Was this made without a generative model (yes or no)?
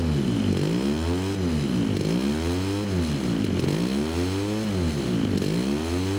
yes